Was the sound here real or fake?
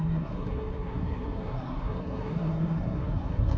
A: fake